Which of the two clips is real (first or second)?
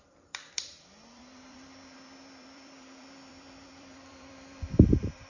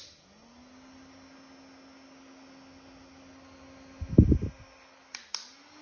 second